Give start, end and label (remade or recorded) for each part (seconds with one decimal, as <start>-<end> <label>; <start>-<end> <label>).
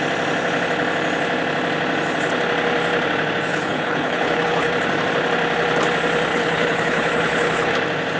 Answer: 0.0-3.5 recorded; 3.5-4.7 remade; 4.7-6.3 recorded; 6.3-7.7 remade; 7.7-8.2 recorded